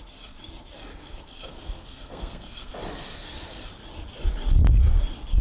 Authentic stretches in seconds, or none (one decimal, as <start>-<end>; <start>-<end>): 0.0-0.9; 2.7-5.4